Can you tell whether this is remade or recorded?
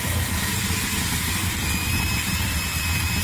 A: recorded